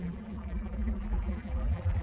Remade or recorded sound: remade